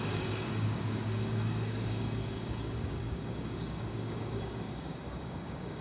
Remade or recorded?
remade